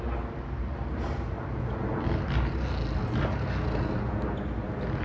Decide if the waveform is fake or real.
real